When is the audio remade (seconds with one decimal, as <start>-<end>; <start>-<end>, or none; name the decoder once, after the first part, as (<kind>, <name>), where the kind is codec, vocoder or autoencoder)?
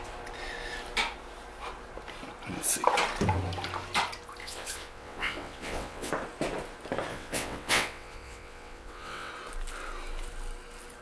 4.4-6.1 (vocoder, WaveNeXt); 7.1-9.3